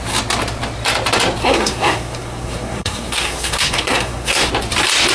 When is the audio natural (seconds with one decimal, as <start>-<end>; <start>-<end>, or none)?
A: 0.0-1.4; 4.5-5.1